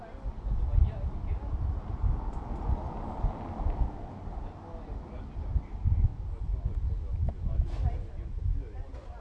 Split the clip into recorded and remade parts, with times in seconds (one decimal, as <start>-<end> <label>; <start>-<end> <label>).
0.0-9.2 recorded